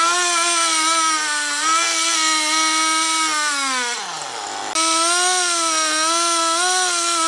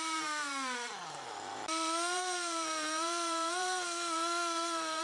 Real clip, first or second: first